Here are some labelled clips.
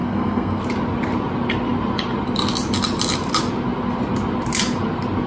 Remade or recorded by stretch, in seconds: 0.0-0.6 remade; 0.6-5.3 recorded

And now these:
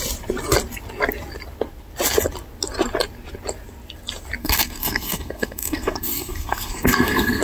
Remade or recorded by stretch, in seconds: 0.0-4.4 recorded; 4.4-7.4 remade

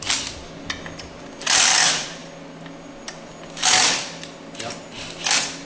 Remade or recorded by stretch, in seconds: 0.0-5.7 recorded